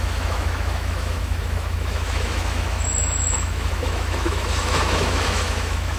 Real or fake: fake